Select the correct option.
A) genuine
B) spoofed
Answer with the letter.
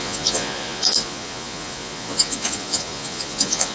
B